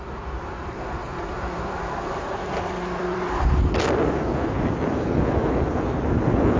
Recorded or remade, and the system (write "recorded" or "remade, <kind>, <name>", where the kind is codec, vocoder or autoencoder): remade, vocoder, BigVGAN v2